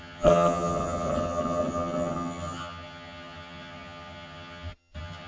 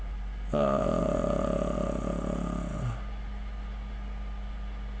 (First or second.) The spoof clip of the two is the first